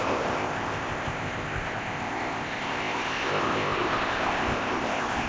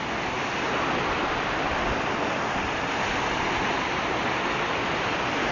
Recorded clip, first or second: second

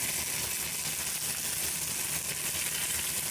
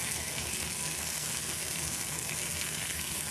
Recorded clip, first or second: first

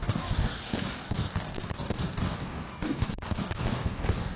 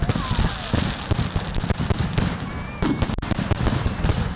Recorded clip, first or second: second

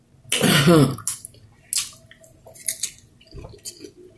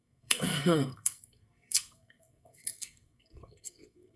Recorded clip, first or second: first